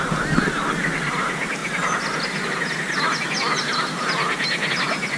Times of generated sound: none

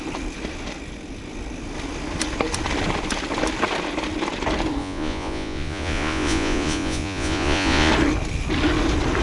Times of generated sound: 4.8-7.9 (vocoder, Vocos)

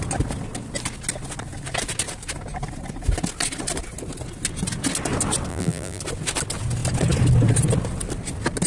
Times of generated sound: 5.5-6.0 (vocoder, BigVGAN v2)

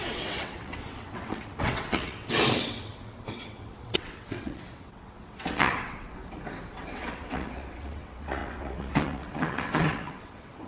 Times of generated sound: 0.0-6.2 (vocoder, WaveNeXt); 6.7-10.7